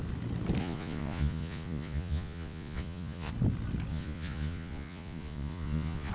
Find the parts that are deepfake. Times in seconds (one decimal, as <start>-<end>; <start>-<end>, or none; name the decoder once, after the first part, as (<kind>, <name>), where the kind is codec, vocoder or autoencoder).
0.6-3.3 (vocoder, Vocos); 3.9-6.1

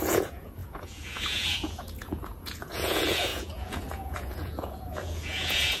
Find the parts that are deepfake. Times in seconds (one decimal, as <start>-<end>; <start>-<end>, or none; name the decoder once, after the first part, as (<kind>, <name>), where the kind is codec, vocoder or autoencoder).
0.0-5.8 (vocoder, Vocos)

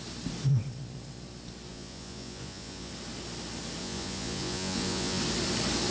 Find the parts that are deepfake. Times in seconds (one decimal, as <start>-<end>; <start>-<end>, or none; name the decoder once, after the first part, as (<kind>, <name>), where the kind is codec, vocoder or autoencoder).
1.7-2.9 (vocoder, Vocos); 3.8-5.2

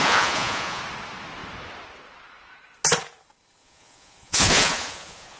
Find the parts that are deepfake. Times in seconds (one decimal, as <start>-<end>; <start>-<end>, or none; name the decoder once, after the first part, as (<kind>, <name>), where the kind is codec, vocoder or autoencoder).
0.0-0.8 (vocoder, Vocos); 3.6-5.4

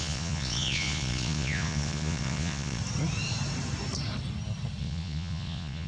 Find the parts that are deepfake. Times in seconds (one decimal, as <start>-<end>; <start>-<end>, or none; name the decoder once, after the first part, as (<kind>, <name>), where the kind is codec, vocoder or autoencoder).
0.0-2.8 (vocoder, Vocos); 4.8-5.9

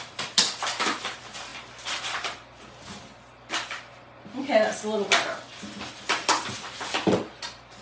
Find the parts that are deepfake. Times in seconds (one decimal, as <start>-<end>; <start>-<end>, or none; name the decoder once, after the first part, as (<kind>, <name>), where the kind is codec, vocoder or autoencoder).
none

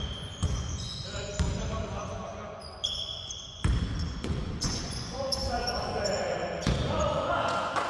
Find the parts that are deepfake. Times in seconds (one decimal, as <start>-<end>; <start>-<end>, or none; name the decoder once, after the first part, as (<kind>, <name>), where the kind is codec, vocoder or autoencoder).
0.0-1.3 (vocoder, Vocos); 1.8-7.9

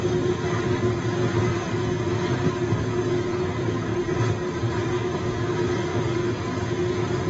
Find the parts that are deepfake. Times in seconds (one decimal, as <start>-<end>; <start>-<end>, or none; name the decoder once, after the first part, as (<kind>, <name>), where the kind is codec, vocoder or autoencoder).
none